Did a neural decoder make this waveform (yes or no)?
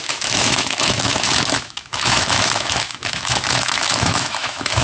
yes